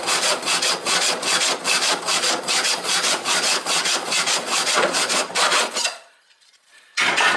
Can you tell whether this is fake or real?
fake